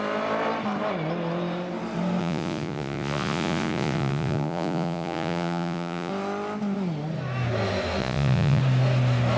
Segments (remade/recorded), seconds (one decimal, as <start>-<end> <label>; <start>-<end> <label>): 0.0-2.2 recorded; 2.2-6.1 remade; 6.1-8.0 recorded; 8.0-8.6 remade; 8.6-9.4 recorded